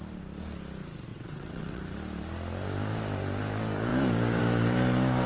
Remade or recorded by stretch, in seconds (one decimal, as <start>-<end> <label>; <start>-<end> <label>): 0.0-1.1 recorded; 1.1-1.8 remade; 1.8-5.3 recorded

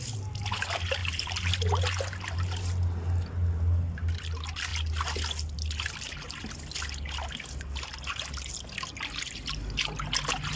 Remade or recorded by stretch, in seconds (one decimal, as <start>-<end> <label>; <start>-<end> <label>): 0.0-10.6 recorded